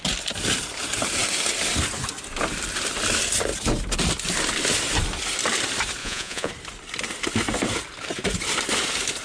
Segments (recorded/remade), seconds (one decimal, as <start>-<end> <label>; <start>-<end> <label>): 0.0-6.0 recorded; 6.0-6.5 remade; 6.5-9.2 recorded